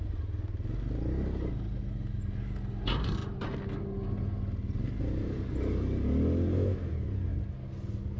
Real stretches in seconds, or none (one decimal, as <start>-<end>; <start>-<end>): 0.0-8.2